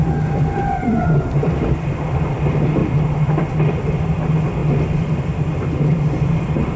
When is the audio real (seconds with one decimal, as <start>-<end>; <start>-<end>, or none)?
2.8-3.7; 4.6-5.7